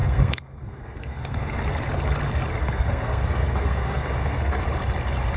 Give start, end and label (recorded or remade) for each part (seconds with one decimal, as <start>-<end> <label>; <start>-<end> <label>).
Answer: 0.0-1.6 remade; 1.6-2.6 recorded; 2.6-4.6 remade; 4.6-5.4 recorded